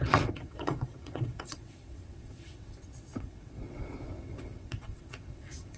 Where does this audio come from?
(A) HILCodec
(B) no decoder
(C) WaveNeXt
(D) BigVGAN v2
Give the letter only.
C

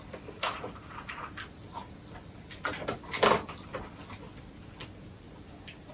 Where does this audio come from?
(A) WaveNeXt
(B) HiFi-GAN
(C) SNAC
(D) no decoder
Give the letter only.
D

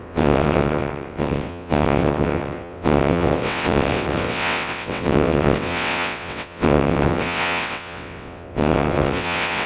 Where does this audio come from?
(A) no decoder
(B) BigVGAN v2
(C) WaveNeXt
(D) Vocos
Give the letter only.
C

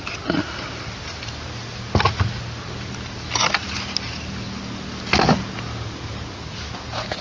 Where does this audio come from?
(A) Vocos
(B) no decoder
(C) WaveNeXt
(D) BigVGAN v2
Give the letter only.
B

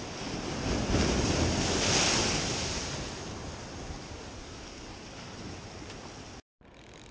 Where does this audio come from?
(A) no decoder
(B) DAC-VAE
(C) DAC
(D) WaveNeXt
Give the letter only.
A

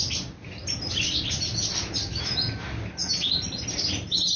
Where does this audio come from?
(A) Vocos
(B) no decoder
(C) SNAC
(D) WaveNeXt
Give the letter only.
B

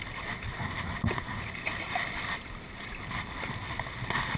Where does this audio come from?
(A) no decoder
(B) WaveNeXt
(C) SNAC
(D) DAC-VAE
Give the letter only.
A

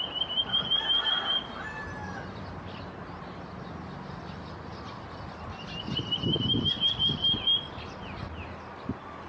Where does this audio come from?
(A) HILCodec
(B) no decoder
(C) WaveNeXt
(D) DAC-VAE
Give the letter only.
B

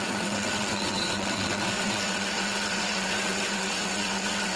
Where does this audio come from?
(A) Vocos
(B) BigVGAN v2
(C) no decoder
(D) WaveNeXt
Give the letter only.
D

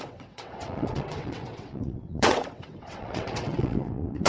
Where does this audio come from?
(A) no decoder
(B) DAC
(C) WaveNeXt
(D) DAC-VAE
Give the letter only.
C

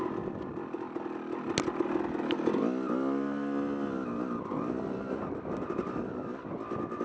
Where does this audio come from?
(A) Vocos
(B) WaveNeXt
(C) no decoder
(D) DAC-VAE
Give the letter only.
C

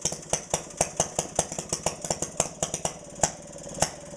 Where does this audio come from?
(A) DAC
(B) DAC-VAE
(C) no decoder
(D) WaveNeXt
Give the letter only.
C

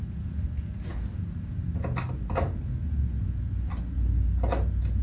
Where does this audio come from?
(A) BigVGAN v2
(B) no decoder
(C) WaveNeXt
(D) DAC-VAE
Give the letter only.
B